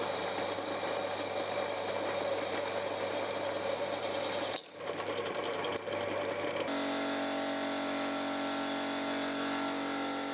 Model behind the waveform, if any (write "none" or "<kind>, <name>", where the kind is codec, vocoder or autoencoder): none